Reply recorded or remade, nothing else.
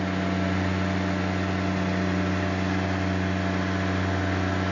recorded